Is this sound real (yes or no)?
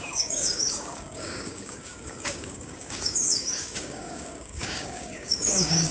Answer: no